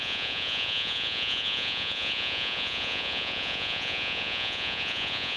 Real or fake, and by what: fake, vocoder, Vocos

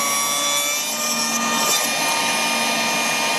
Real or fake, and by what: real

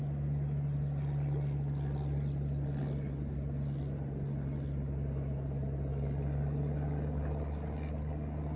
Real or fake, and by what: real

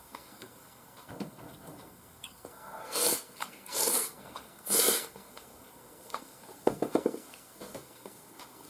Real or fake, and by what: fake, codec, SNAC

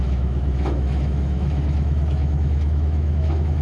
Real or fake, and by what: fake, autoencoder, DAC-VAE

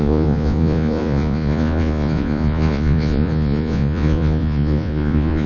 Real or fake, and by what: fake, vocoder, Vocos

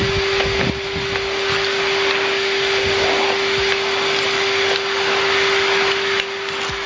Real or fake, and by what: real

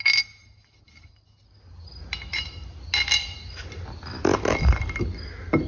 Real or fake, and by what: real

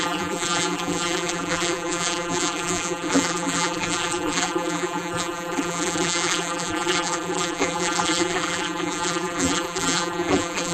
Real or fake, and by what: fake, vocoder, BigVGAN v2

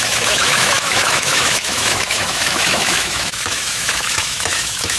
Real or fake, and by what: fake, autoencoder, DAC-VAE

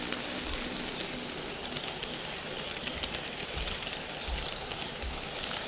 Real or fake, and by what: real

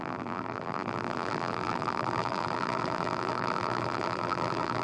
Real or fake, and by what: fake, vocoder, BigVGAN v2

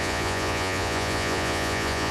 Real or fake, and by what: fake, vocoder, Vocos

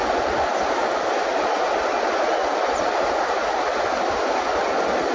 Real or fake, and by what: real